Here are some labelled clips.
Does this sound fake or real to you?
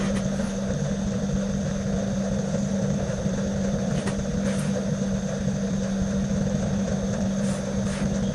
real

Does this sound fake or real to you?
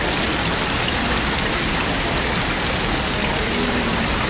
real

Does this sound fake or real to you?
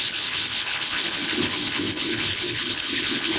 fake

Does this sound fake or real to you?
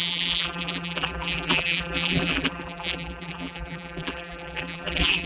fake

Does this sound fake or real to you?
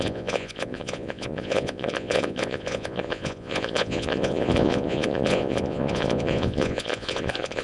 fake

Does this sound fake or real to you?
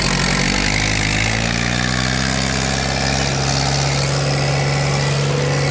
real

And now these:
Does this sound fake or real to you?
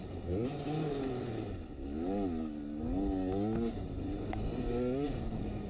real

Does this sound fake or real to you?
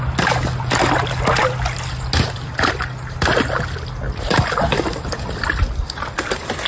real